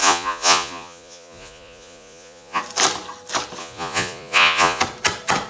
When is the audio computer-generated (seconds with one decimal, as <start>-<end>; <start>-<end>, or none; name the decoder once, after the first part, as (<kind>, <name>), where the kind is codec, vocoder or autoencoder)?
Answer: 0.0-2.6 (vocoder, Vocos); 3.6-4.8